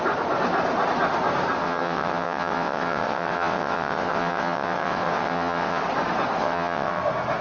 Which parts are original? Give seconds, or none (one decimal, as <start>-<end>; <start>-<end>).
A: 0.0-1.6; 5.8-6.4; 7.0-7.4